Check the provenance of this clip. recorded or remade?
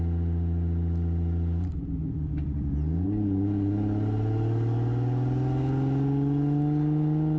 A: recorded